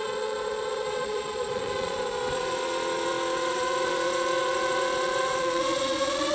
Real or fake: fake